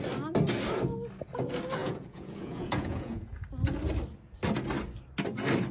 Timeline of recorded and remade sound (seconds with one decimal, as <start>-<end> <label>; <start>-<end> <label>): 0.0-1.8 recorded; 1.8-3.4 remade; 3.4-5.7 recorded